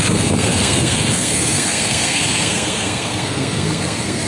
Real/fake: fake